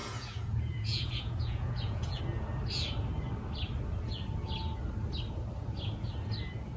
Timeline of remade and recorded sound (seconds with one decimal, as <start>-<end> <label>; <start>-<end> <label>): 0.0-2.2 remade; 2.2-6.8 recorded